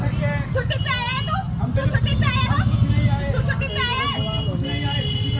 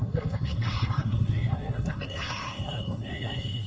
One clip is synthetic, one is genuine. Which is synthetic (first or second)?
second